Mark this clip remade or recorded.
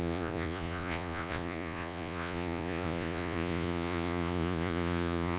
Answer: remade